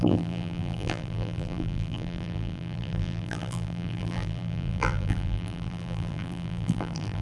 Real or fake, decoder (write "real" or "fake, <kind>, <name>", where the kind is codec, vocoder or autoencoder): fake, vocoder, BigVGAN v2